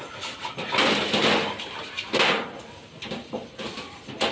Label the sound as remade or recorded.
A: recorded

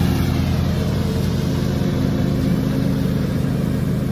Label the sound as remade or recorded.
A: remade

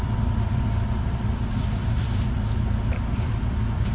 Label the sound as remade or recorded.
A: remade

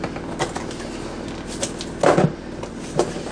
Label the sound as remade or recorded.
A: recorded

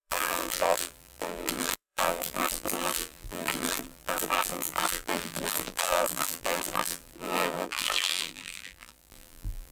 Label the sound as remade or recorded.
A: remade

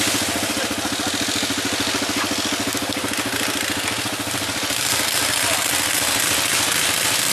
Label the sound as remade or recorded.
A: recorded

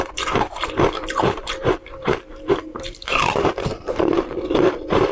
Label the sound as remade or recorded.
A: remade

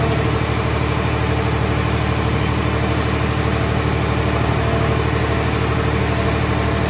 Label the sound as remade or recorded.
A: recorded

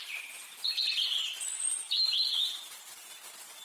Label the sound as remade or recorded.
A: remade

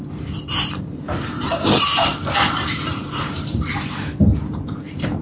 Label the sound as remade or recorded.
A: remade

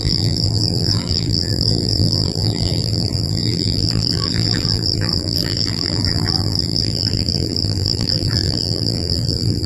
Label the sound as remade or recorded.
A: remade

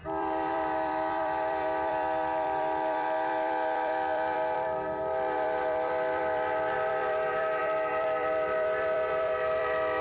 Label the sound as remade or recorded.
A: remade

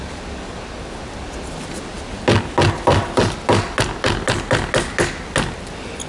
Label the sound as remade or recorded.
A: recorded